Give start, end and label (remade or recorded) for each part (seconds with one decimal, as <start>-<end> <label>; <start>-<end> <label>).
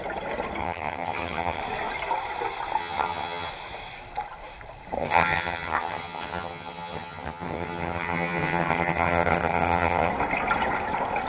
0.0-0.6 recorded; 0.6-1.6 remade; 1.6-2.8 recorded; 2.8-3.5 remade; 3.5-5.0 recorded; 5.0-10.1 remade; 10.1-11.3 recorded